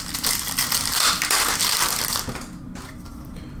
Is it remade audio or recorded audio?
recorded